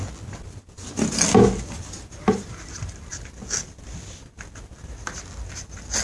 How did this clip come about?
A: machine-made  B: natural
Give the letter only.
B